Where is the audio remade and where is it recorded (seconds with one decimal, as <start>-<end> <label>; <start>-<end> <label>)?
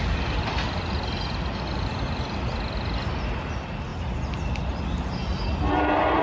0.0-3.9 recorded; 3.9-4.8 remade; 4.8-5.3 recorded; 5.3-5.8 remade; 5.8-6.2 recorded